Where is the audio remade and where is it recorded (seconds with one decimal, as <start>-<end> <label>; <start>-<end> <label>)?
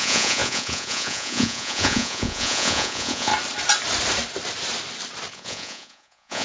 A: 0.0-3.3 remade; 3.3-5.3 recorded; 5.3-6.4 remade